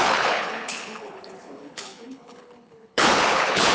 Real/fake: fake